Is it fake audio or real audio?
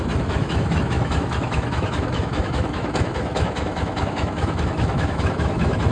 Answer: fake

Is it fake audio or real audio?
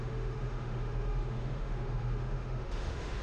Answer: fake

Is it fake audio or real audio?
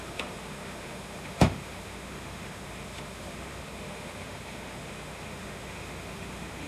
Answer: fake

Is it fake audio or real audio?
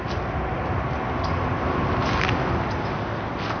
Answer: real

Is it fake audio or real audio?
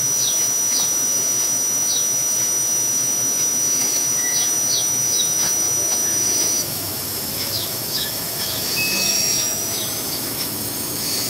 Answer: fake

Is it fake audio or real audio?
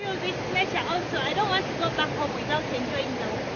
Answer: real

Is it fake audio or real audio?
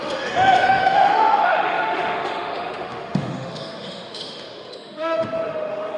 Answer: fake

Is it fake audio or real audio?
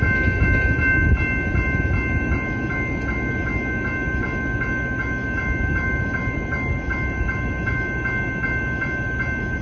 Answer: real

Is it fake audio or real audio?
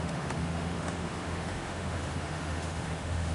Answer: fake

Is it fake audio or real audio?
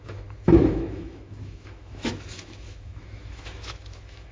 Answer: fake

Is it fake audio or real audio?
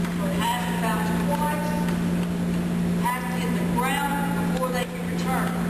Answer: real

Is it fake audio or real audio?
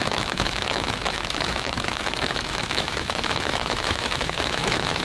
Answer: fake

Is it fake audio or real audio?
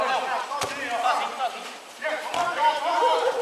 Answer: real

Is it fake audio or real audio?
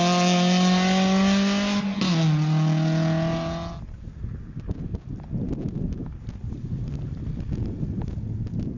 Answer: real